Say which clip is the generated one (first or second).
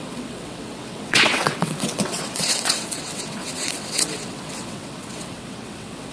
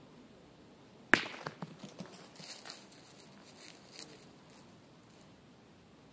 first